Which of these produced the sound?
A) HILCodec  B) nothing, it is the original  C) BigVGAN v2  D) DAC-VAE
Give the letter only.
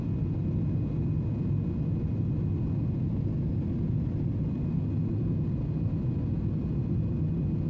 B